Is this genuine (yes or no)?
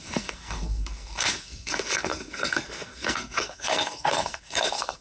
no